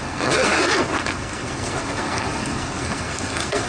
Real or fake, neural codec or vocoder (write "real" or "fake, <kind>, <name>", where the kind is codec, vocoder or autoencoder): fake, codec, SNAC